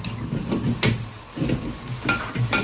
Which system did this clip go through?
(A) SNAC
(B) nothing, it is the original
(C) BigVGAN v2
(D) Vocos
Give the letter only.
B